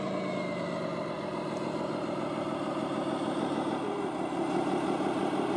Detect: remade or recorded recorded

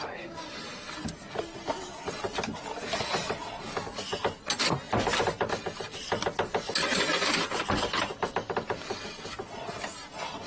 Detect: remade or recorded recorded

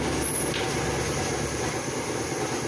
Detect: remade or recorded recorded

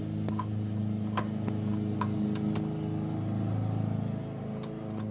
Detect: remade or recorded recorded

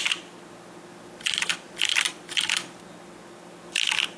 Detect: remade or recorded recorded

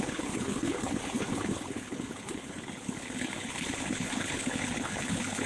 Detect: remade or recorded remade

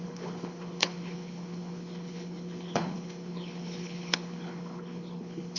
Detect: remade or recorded remade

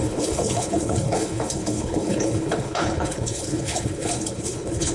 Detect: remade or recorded remade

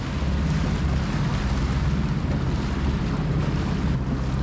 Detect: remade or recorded recorded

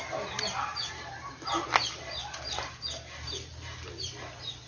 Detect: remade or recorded recorded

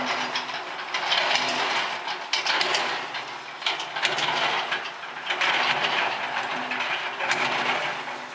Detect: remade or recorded recorded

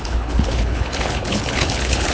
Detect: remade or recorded remade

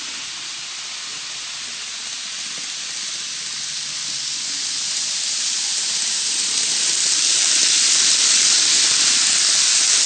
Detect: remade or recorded recorded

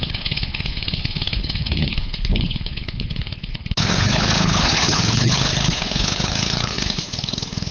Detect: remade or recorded remade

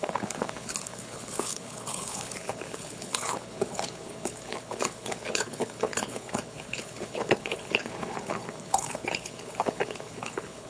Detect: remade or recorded remade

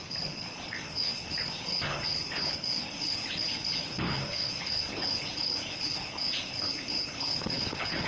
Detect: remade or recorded remade